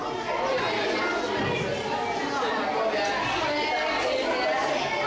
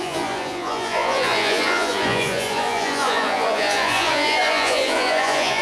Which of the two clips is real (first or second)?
first